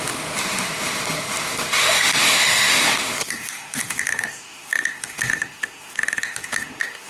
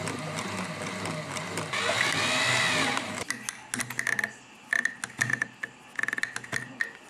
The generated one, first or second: first